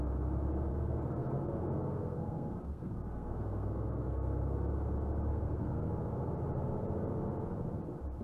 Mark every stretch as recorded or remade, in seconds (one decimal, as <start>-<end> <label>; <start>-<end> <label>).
0.0-0.7 recorded; 0.7-4.7 remade; 4.7-5.3 recorded; 5.3-5.9 remade; 5.9-8.2 recorded